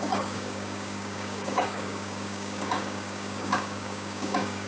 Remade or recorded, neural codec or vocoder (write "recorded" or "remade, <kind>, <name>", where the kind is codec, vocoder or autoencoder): remade, codec, DAC